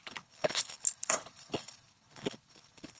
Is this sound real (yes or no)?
no